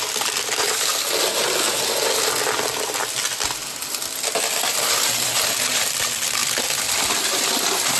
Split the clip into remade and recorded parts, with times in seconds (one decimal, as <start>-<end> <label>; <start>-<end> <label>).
0.0-0.9 remade; 0.9-4.7 recorded; 4.7-8.0 remade